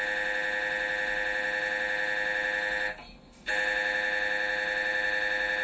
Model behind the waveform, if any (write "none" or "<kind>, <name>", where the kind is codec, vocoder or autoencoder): none